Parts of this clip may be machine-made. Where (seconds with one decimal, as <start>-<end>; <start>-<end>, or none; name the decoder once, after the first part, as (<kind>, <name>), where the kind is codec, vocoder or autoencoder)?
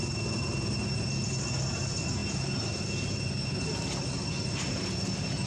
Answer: none